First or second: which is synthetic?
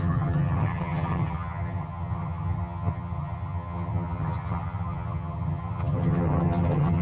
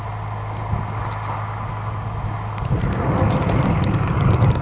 first